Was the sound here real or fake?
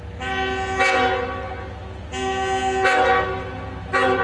real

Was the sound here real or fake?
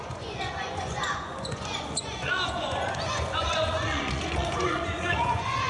fake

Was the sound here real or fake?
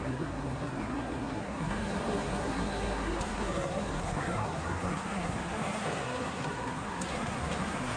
fake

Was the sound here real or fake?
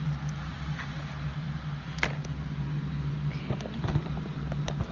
real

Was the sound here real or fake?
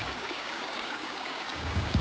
fake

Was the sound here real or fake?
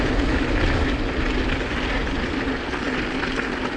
real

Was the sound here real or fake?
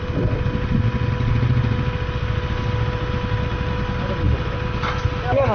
real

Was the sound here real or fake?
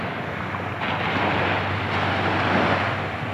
real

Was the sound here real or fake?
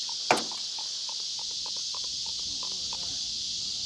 real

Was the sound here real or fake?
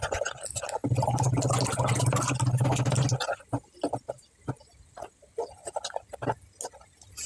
real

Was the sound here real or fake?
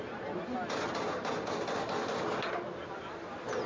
real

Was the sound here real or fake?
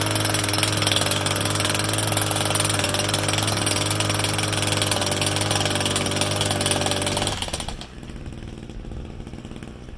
real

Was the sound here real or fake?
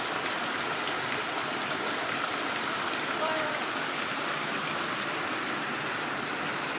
fake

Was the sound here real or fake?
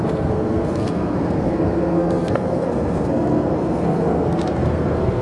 fake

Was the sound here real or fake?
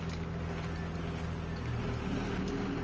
real